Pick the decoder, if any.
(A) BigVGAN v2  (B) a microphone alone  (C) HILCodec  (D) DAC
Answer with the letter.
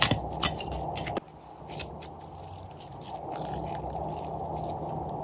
B